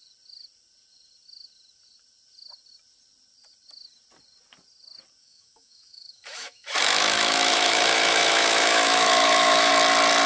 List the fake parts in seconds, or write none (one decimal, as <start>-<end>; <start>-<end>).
5.2-9.7